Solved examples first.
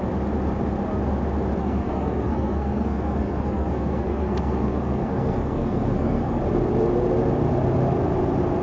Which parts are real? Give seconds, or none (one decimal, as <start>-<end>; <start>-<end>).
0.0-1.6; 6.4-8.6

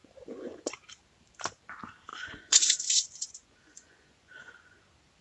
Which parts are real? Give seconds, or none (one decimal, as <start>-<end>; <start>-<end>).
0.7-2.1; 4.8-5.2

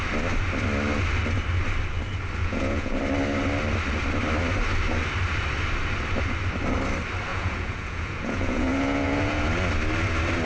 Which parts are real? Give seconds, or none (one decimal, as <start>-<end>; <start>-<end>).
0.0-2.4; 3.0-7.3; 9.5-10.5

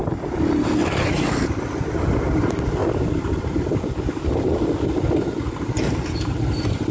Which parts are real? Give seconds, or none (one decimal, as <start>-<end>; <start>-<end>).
0.0-6.9